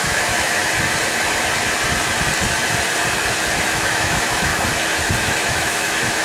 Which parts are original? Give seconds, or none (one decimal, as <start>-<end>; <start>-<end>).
0.6-3.8; 4.5-5.2